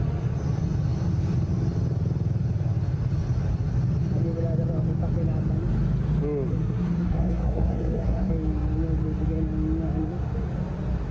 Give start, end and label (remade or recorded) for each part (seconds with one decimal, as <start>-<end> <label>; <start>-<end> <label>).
0.0-6.5 recorded; 6.5-8.3 remade; 8.3-11.1 recorded

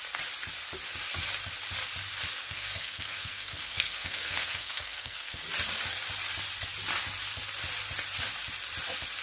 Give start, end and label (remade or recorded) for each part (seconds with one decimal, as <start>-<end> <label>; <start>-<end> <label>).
0.0-2.4 recorded; 2.4-5.4 remade; 5.4-9.2 recorded

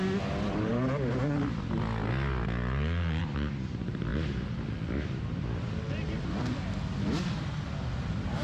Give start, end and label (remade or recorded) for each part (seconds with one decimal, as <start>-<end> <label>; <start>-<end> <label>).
0.0-8.4 recorded

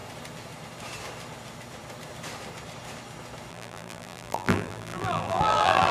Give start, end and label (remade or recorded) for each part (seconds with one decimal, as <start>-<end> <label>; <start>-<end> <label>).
0.0-3.5 recorded; 3.5-5.9 remade

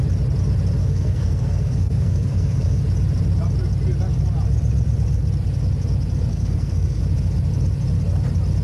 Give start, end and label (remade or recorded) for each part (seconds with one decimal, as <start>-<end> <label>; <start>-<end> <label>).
0.0-0.8 recorded; 0.8-2.8 remade; 2.8-6.3 recorded; 6.3-7.0 remade; 7.0-8.6 recorded

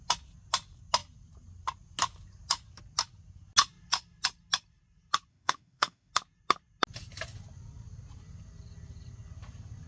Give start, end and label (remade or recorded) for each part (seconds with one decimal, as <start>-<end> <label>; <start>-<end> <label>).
0.0-5.3 recorded; 5.3-6.1 remade; 6.1-9.9 recorded

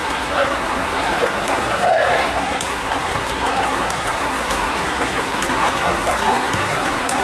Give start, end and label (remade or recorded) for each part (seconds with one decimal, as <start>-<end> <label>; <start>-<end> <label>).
0.0-7.2 remade